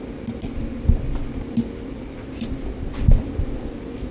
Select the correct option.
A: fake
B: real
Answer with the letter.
B